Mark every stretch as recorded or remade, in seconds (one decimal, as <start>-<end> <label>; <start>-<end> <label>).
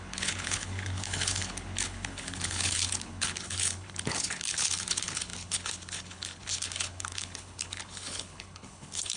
0.0-9.2 remade